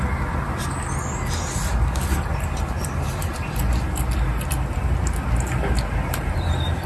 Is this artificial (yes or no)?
no